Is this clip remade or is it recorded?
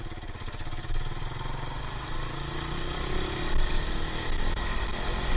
recorded